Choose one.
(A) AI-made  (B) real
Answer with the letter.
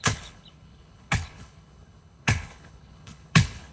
A